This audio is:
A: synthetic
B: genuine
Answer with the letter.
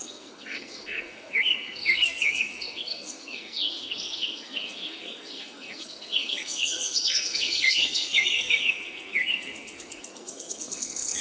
A